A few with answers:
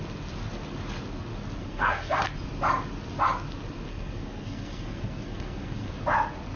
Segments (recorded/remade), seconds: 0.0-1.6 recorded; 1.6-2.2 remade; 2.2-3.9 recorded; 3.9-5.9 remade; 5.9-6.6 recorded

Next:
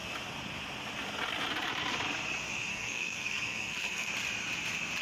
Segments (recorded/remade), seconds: 0.0-2.7 recorded; 2.7-4.1 remade; 4.1-5.0 recorded

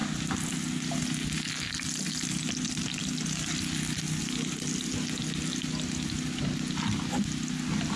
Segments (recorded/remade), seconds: 0.0-8.0 recorded

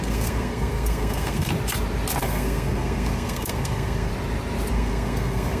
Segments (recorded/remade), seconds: 0.0-1.5 remade; 1.5-2.2 recorded; 2.2-4.1 remade; 4.1-4.7 recorded; 4.7-5.6 remade

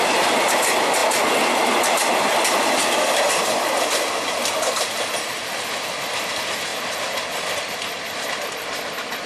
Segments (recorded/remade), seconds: 0.0-9.3 recorded

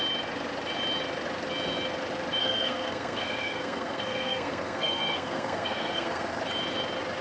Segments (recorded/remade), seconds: 0.0-2.4 recorded; 2.4-6.4 remade; 6.4-7.2 recorded

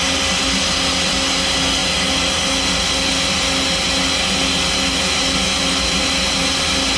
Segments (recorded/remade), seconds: 0.0-7.0 recorded

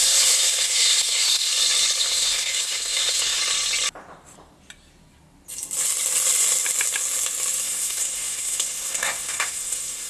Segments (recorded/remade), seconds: 0.0-1.5 remade; 1.5-2.0 recorded; 2.0-3.4 remade; 3.4-7.6 recorded; 7.6-10.1 remade